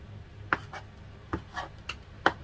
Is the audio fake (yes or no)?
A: no